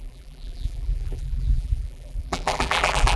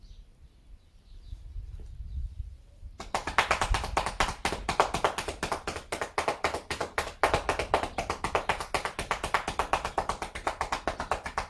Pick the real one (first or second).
second